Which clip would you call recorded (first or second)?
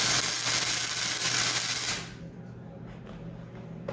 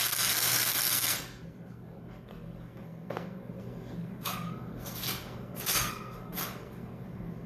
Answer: first